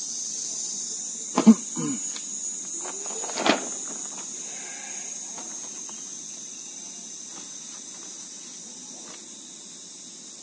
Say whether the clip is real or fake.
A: real